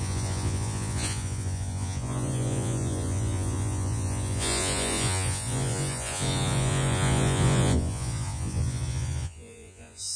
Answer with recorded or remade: remade